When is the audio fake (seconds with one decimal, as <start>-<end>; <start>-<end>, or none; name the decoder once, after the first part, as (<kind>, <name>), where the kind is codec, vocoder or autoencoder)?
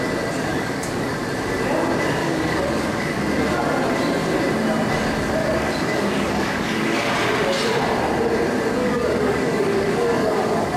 0.5-1.1 (codec, DAC); 2.2-3.2; 5.4-7.1; 8.8-10.8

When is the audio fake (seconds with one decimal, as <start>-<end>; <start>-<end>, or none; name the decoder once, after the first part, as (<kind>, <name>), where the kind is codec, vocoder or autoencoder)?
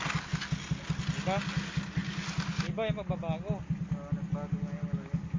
none